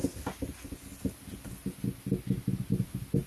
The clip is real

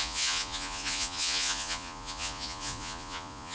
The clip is fake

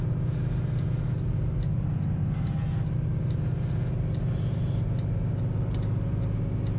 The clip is real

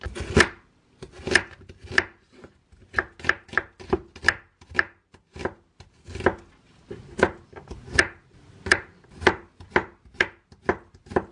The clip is real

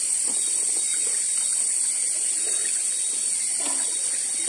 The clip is real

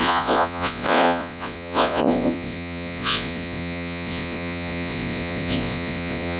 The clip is fake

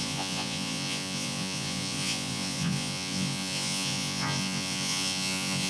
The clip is fake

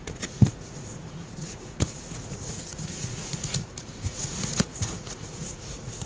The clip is fake